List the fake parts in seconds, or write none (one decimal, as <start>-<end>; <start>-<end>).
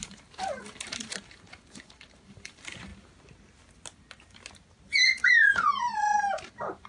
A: 0.0-2.9; 5.3-6.9